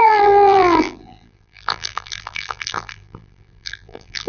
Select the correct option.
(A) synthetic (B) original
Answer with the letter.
A